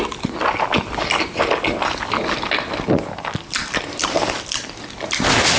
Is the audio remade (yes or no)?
no